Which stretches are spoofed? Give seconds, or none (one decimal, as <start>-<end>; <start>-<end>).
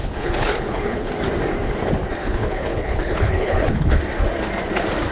0.0-1.1; 2.2-4.0